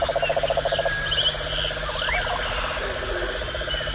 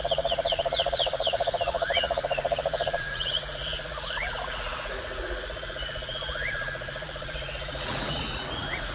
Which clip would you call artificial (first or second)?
second